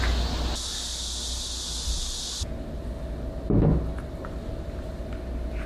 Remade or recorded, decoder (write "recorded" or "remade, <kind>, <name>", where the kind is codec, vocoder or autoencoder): recorded